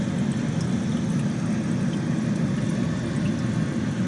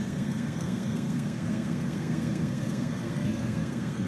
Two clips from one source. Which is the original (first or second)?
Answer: first